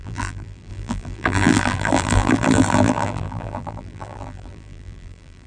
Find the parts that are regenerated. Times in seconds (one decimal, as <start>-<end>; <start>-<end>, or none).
0.0-5.5